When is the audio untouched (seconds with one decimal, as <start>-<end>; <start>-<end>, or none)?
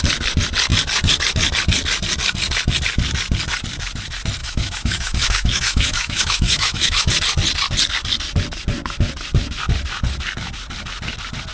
0.0-4.4; 7.1-11.5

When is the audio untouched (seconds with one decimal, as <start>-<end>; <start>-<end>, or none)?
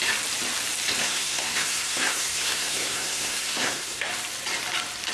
0.0-1.0; 4.1-5.1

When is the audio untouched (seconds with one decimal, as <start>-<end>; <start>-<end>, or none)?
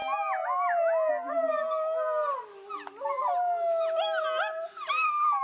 0.0-5.4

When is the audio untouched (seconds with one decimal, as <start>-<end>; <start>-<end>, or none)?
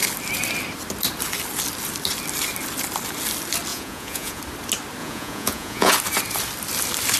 0.0-3.7; 4.4-5.0; 5.9-7.2